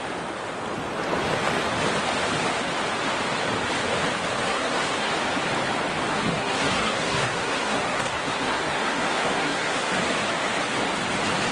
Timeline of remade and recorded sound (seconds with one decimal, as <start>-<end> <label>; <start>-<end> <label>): 0.0-4.4 recorded; 4.4-5.1 remade; 5.1-6.1 recorded; 6.1-10.0 remade; 10.0-11.5 recorded